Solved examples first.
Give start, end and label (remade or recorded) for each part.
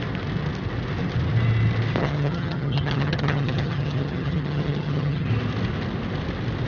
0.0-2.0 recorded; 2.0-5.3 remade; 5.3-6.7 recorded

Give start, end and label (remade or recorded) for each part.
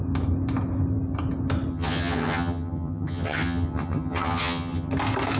0.0-1.7 recorded; 1.7-4.9 remade; 4.9-5.4 recorded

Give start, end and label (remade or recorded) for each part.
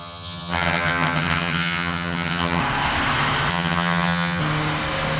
0.0-2.6 remade; 2.6-3.5 recorded; 3.5-4.4 remade; 4.4-5.2 recorded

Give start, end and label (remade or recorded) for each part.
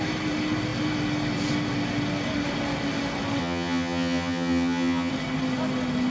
0.0-3.4 recorded; 3.4-5.1 remade; 5.1-6.1 recorded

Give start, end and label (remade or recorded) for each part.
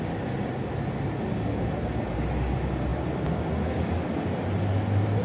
0.0-5.2 recorded